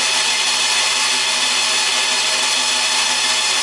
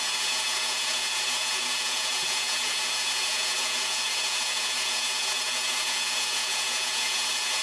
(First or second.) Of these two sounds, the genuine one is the first